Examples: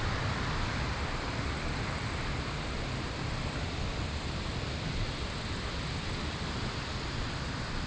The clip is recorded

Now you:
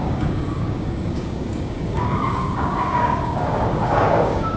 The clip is remade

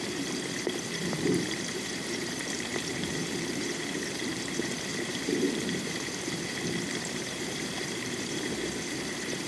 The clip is remade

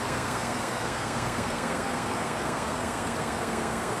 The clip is remade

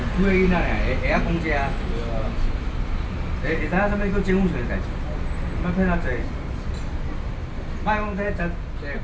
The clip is recorded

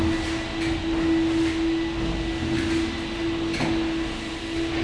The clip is recorded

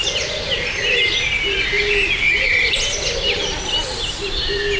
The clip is recorded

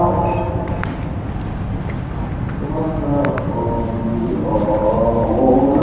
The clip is recorded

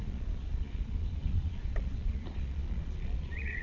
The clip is remade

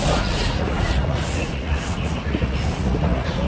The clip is remade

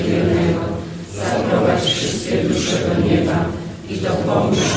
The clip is recorded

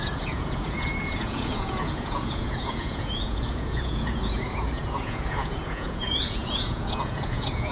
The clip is remade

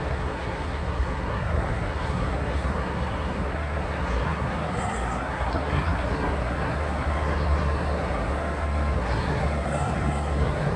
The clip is remade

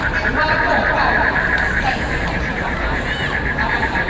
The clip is remade